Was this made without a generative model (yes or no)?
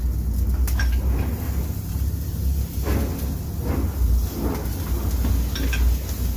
yes